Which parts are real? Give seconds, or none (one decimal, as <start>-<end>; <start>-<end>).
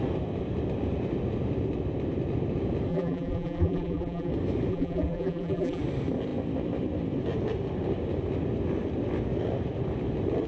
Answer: 0.0-2.9; 4.3-4.7; 5.8-10.5